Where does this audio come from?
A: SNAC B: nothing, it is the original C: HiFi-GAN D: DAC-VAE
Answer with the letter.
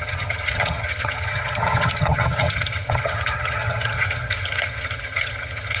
C